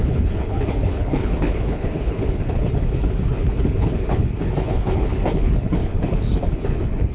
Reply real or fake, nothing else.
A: fake